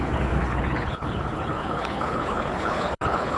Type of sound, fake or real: fake